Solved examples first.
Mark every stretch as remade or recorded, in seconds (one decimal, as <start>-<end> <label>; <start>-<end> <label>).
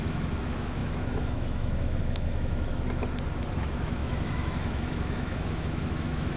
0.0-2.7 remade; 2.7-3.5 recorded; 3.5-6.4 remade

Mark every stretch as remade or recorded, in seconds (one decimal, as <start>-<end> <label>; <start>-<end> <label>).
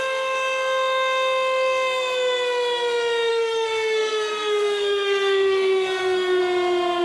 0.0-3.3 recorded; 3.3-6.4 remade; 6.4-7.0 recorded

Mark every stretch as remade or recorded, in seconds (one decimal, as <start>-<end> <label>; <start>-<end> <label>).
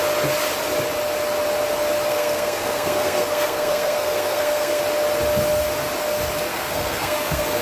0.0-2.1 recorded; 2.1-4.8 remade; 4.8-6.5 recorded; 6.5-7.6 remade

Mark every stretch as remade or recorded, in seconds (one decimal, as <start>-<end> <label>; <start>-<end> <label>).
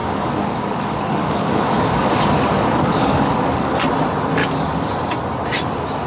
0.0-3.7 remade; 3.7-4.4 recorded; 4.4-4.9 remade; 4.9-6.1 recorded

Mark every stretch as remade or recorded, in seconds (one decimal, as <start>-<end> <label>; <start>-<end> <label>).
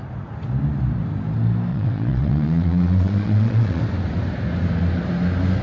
0.0-1.7 recorded; 1.7-3.8 remade; 3.8-5.6 recorded